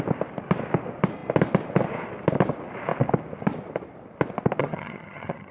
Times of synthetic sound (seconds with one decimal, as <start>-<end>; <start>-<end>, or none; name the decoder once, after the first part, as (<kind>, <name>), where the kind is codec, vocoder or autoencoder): 4.6-5.5 (vocoder, HiFi-GAN)